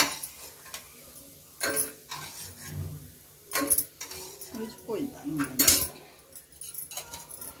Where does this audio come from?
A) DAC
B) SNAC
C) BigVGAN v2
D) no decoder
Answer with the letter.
D